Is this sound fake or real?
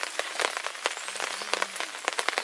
real